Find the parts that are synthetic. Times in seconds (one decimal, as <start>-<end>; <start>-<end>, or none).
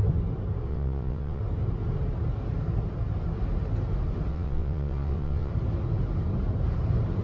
0.7-1.4; 4.3-5.5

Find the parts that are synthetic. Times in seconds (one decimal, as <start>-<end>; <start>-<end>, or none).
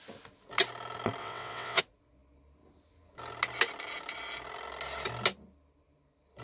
1.2-1.8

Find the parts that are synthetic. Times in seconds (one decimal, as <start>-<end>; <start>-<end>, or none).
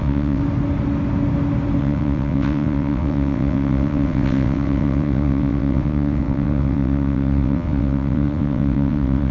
0.0-0.4; 1.8-9.3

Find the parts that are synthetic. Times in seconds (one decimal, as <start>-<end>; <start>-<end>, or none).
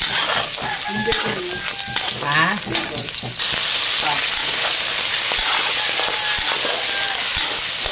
none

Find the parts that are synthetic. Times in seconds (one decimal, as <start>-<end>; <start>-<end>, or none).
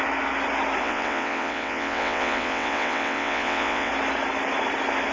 0.8-3.9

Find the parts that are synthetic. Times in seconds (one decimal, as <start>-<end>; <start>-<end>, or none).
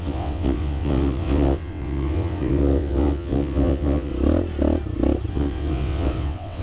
0.0-4.1; 5.3-6.6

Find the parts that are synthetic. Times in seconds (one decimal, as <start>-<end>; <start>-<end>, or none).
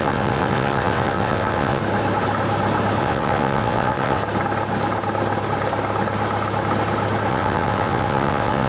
0.0-1.8; 3.0-4.2; 7.3-8.7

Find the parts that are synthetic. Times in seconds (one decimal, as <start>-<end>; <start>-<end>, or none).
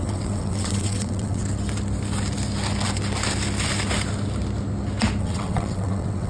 0.0-1.4; 5.2-6.3